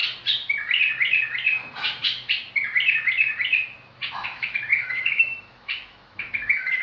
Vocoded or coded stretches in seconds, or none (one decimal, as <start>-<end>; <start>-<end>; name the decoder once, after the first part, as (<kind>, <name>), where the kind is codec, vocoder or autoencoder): 4.1-6.8 (autoencoder, DAC-VAE)